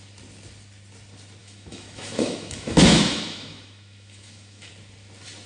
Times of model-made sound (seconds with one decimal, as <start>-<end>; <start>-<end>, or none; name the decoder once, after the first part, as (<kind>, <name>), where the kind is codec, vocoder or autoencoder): 1.4-4.7 (autoencoder, DAC-VAE)